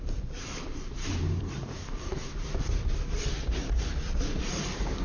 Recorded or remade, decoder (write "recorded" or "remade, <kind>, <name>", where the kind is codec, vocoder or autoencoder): remade, vocoder, BigVGAN v2